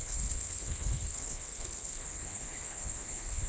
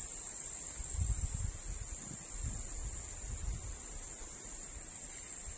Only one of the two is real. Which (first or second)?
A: second